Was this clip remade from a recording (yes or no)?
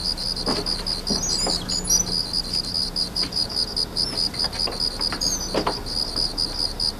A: no